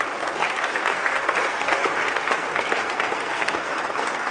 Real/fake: fake